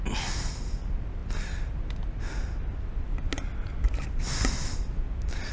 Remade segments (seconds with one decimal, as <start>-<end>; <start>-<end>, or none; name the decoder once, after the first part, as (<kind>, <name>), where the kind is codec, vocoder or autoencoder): none